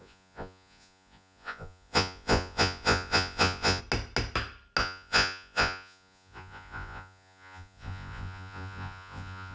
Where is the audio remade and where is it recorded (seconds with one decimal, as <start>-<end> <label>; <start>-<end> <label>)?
0.0-3.8 remade; 3.8-4.8 recorded; 4.8-9.5 remade